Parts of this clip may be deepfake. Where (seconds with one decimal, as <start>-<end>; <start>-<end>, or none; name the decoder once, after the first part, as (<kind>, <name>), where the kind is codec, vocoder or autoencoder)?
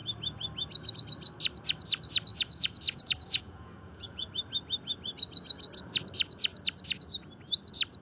2.3-4.3 (vocoder, Vocos)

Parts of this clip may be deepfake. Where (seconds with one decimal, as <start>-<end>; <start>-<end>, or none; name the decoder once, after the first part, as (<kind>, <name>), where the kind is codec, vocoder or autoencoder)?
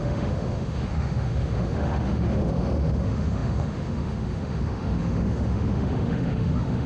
0.0-6.9 (autoencoder, DAC-VAE)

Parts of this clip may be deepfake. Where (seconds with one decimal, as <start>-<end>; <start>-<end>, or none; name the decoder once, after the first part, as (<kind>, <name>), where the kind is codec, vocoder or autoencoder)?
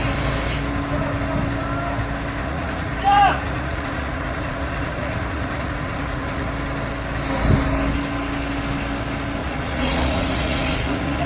2.4-2.9 (vocoder, Vocos); 3.3-6.5; 9.4-11.3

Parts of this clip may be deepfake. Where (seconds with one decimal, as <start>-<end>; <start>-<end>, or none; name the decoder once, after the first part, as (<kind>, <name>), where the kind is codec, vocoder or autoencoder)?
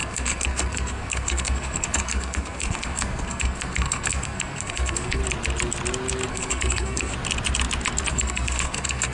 0.0-5.2 (codec, SNAC); 6.3-7.1; 8.1-9.1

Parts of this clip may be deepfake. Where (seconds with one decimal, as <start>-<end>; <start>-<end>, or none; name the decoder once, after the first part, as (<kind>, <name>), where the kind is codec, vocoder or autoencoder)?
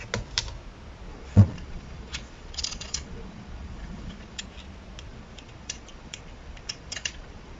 1.1-4.4 (vocoder, Vocos); 5.1-7.6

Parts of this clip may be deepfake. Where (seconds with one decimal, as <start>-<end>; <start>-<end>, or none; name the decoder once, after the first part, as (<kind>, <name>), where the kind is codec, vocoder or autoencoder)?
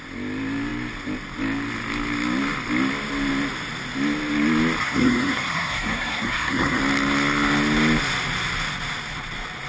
4.8-6.8 (codec, SNAC)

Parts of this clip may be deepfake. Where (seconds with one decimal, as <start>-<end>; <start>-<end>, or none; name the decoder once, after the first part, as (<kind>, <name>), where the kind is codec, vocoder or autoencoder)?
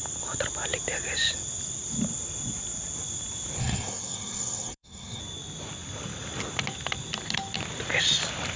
3.6-5.2 (codec, SNAC)